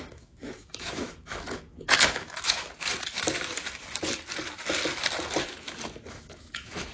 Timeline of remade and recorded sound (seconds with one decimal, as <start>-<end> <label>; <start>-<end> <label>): 0.0-2.7 remade; 2.7-6.1 recorded; 6.1-6.9 remade